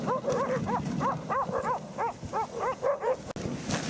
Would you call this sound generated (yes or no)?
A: no